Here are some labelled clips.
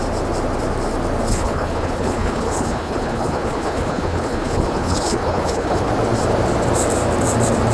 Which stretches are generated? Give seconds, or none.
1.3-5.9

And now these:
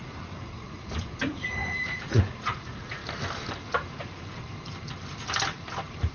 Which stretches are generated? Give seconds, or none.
0.0-3.0